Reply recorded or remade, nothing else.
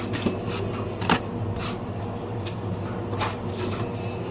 recorded